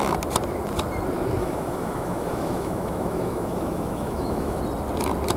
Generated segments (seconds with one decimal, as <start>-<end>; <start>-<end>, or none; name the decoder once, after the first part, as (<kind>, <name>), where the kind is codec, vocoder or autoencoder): 1.4-4.6 (autoencoder, DAC-VAE)